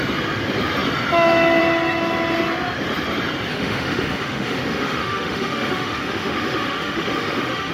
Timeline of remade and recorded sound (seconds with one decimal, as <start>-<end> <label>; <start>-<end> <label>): 0.0-3.5 recorded; 3.5-7.7 remade